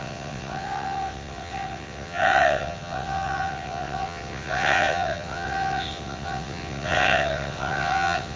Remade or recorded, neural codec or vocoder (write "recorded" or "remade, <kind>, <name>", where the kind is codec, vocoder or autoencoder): remade, vocoder, WaveNeXt